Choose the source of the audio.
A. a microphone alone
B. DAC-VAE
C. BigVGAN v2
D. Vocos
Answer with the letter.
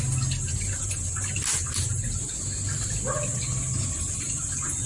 A